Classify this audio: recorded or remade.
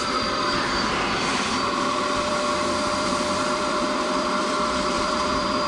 remade